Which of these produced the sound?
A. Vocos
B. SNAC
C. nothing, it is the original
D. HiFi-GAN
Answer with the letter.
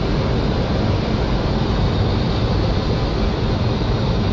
C